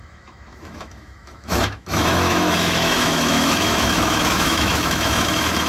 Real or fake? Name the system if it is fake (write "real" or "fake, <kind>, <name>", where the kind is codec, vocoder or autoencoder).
fake, autoencoder, DAC-VAE